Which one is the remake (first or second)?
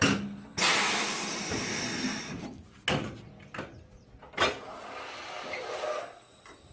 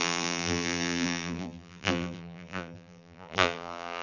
second